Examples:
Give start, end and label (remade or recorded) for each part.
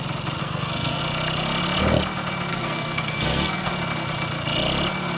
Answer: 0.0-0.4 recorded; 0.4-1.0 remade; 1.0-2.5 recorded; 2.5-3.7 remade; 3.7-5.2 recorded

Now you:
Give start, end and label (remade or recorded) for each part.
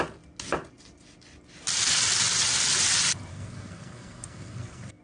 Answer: 0.0-3.3 recorded; 3.3-5.0 remade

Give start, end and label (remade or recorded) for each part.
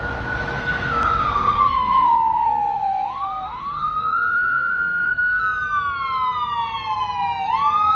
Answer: 0.0-0.6 recorded; 0.6-5.4 remade; 5.4-8.0 recorded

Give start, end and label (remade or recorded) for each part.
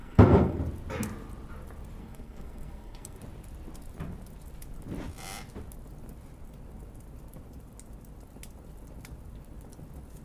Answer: 0.0-0.6 remade; 0.6-2.0 recorded; 2.0-3.2 remade; 3.2-10.2 recorded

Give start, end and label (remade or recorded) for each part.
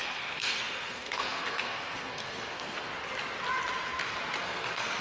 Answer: 0.0-2.9 remade; 2.9-4.4 recorded; 4.4-5.0 remade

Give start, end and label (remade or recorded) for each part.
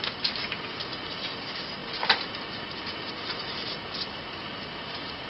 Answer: 0.0-5.3 recorded